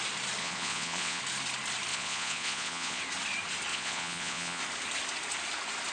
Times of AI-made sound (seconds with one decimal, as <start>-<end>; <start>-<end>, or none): 0.4-1.2; 1.9-3.0; 3.7-4.6